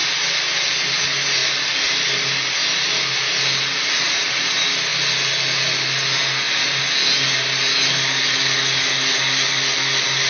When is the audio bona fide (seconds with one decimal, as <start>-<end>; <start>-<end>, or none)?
0.0-10.3